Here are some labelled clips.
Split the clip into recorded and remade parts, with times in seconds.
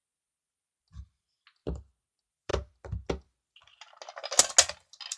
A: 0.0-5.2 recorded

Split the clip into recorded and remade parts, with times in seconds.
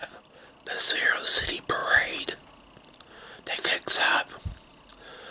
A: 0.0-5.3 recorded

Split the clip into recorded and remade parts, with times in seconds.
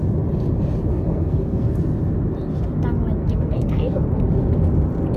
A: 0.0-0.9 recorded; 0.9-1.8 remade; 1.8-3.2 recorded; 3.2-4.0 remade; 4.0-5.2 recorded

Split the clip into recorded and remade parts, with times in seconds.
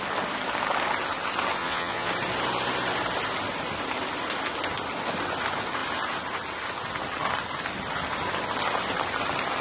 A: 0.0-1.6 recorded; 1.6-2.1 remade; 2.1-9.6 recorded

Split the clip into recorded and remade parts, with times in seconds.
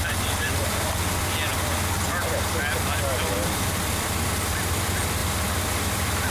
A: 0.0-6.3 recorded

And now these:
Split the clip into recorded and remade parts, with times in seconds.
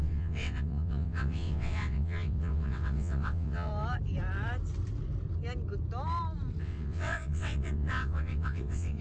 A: 0.0-3.7 remade; 3.7-6.6 recorded; 6.6-9.0 remade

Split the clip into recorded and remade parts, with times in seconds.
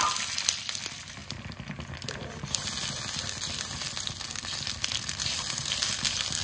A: 0.0-6.4 recorded